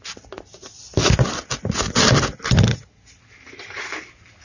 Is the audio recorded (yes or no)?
yes